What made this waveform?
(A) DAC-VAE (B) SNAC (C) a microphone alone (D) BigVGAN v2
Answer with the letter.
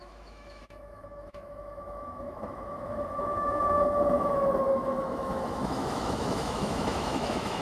A